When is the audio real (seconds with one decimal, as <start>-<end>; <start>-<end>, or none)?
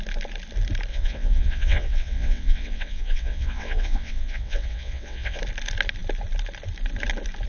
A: 0.0-0.9; 5.4-7.5